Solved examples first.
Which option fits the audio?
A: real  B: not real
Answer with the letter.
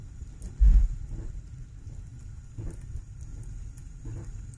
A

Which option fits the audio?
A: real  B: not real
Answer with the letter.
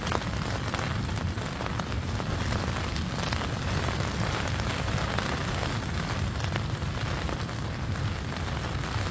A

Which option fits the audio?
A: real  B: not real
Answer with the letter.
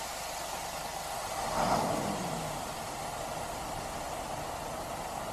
A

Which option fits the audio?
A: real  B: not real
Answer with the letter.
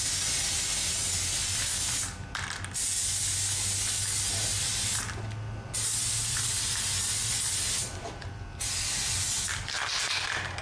A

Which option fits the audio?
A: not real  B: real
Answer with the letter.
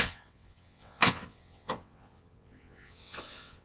A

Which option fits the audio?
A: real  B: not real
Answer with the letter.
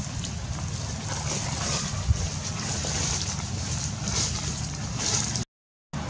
A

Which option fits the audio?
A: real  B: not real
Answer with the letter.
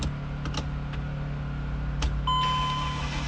A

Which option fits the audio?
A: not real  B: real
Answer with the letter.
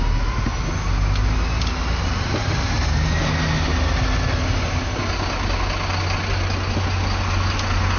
B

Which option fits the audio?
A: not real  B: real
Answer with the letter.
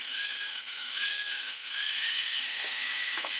A